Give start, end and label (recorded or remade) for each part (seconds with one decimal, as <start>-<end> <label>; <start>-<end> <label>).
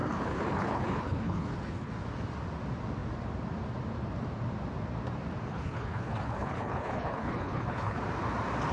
0.0-1.9 remade; 1.9-5.5 recorded; 5.5-8.0 remade; 8.0-8.7 recorded